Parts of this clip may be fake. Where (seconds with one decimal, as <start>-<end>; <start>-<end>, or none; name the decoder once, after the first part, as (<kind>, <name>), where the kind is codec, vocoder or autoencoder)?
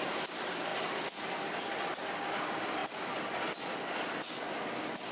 none